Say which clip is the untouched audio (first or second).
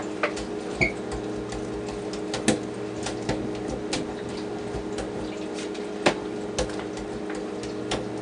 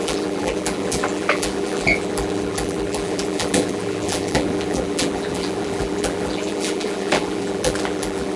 first